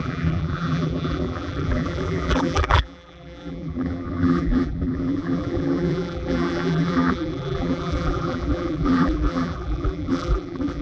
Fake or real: fake